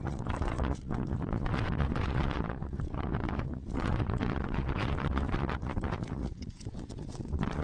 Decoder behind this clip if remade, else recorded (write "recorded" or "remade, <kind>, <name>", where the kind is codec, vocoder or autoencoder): remade, vocoder, WaveNeXt